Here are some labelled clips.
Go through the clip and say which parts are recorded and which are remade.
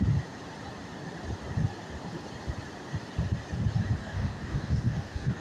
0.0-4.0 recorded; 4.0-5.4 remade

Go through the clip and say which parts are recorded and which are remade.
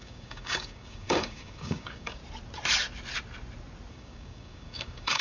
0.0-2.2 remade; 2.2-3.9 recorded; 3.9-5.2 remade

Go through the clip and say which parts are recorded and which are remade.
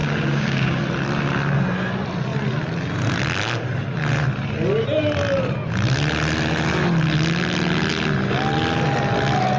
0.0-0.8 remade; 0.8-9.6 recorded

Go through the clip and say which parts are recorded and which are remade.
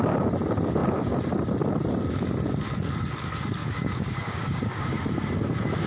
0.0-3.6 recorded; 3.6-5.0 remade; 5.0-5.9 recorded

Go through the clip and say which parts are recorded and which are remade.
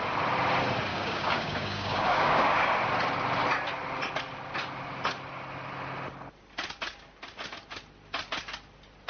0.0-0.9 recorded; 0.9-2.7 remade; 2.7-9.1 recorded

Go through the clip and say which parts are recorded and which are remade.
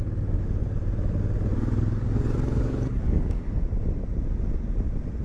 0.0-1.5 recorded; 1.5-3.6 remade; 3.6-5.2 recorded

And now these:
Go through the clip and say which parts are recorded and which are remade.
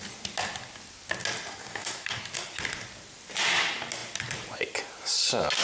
0.0-1.6 recorded; 1.6-2.2 remade; 2.2-5.6 recorded